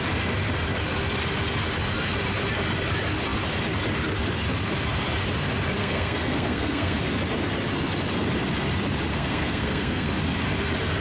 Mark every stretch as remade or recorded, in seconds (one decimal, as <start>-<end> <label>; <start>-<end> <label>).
0.0-5.8 recorded; 5.8-7.0 remade; 7.0-9.1 recorded; 9.1-10.1 remade; 10.1-11.0 recorded